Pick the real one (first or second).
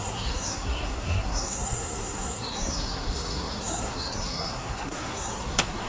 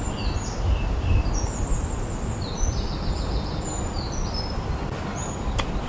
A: second